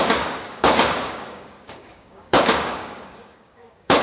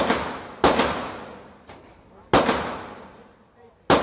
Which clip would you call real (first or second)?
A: second